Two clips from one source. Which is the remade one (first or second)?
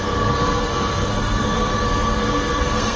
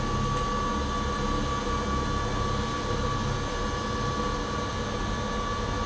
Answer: first